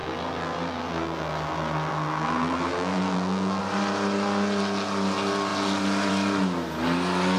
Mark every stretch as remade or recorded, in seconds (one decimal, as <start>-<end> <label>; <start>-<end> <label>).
0.0-3.6 remade; 3.6-7.4 recorded